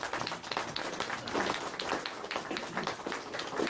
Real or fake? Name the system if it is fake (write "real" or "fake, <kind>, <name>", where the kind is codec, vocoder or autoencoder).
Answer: real